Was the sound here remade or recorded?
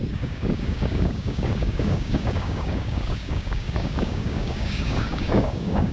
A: remade